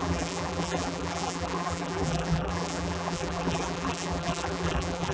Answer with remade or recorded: remade